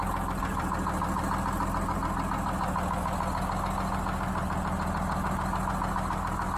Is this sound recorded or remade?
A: recorded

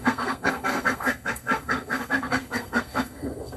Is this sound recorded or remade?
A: remade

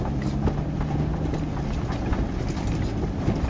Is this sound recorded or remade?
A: recorded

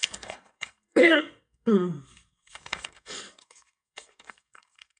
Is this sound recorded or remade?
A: remade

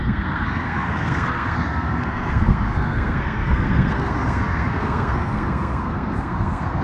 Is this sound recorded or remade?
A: remade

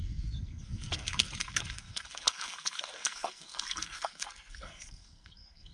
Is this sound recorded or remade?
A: remade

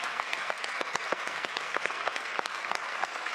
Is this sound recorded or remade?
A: remade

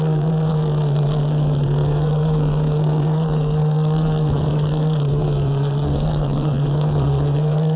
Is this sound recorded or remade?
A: remade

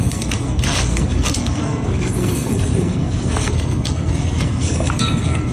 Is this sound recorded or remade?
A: remade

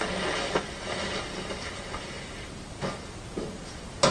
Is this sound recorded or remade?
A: recorded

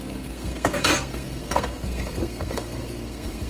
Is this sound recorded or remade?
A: remade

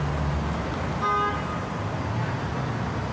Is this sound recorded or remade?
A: recorded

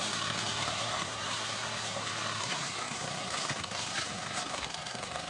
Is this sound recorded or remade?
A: remade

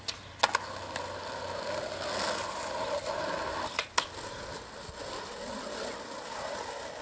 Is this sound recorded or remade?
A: recorded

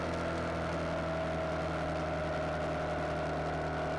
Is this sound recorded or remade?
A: recorded